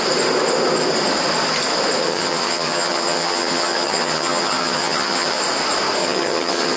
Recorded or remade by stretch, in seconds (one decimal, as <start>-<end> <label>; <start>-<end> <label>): 0.0-2.0 recorded; 2.0-5.4 remade; 5.4-6.0 recorded; 6.0-6.8 remade